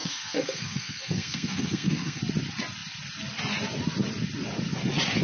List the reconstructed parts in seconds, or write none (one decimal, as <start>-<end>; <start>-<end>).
0.0-2.2